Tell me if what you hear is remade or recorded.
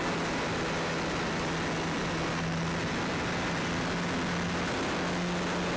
recorded